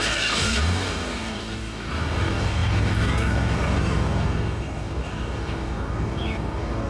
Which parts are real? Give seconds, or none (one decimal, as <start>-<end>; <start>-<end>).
none